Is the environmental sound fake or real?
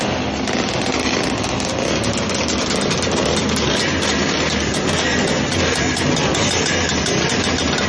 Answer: real